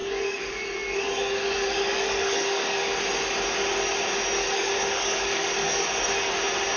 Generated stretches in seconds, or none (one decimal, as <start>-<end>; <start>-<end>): 0.0-3.0; 4.4-6.3